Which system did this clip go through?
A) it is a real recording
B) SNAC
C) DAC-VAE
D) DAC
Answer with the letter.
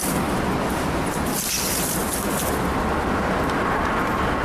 A